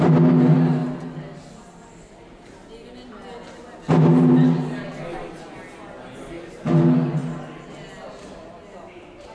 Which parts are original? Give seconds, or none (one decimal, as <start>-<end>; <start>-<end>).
0.0-9.3